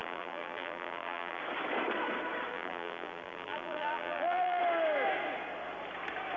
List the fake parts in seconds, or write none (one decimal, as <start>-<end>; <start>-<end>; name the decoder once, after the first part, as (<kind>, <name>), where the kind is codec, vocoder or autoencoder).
0.0-1.4 (vocoder, BigVGAN v2); 2.5-4.6